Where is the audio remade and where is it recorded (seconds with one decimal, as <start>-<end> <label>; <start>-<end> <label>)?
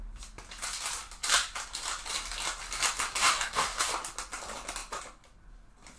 0.0-3.2 recorded; 3.2-3.9 remade; 3.9-6.0 recorded